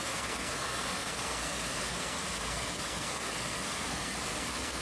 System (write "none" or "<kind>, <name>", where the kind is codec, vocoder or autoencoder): codec, SNAC